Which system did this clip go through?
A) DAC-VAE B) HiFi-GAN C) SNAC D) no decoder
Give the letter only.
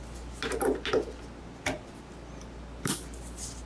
D